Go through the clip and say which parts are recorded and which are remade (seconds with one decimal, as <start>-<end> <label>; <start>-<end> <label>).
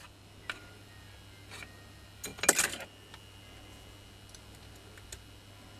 0.0-5.8 recorded